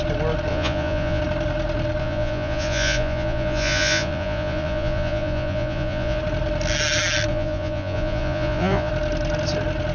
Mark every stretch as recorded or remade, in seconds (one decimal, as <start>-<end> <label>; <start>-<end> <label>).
0.0-0.5 recorded; 0.5-1.2 remade; 1.2-2.0 recorded; 2.0-6.2 remade; 6.2-7.3 recorded; 7.3-8.9 remade; 8.9-9.9 recorded